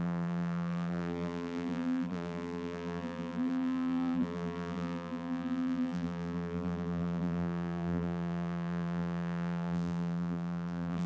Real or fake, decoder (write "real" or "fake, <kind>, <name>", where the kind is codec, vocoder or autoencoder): fake, vocoder, BigVGAN v2